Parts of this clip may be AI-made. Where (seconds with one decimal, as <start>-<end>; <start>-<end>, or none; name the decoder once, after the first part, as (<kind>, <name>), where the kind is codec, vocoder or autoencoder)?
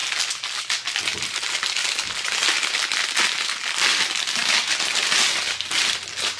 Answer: 1.1-2.3 (vocoder, BigVGAN v2)